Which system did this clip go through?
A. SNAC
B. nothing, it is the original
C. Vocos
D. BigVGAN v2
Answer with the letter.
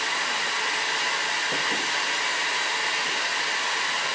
B